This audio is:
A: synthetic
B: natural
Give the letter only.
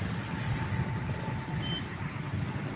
B